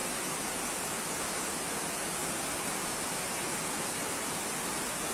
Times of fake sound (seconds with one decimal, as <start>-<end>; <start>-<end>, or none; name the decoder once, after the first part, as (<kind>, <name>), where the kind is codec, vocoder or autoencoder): none